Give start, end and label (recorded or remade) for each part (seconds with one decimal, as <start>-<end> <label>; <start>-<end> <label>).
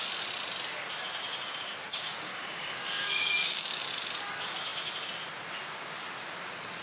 0.0-1.9 recorded; 1.9-3.8 remade; 3.8-6.8 recorded